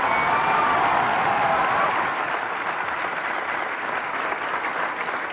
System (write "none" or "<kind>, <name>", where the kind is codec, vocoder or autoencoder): none